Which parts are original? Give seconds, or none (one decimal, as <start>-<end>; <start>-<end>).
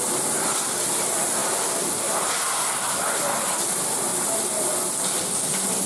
0.0-5.9